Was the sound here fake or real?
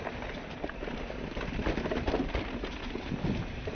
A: real